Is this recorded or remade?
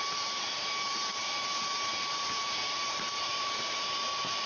remade